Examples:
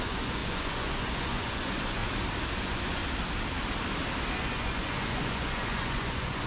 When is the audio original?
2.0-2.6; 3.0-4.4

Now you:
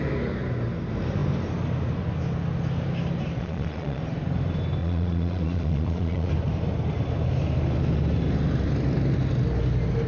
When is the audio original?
0.0-3.4; 4.0-4.8; 6.3-10.1

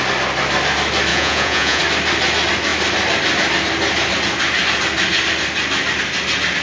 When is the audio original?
0.0-1.1; 1.8-6.6

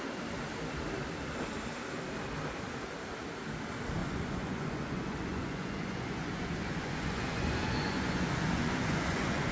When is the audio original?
0.0-4.0

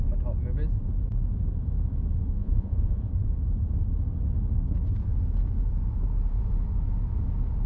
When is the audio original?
0.0-2.4; 3.1-7.7